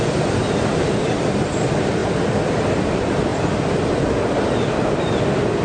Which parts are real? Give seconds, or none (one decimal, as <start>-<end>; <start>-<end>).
2.0-2.6; 3.3-5.0